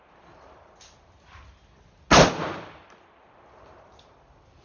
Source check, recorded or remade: recorded